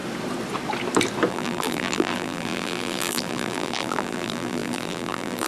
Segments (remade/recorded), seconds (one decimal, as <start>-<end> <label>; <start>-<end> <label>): 0.0-1.3 recorded; 1.3-5.5 remade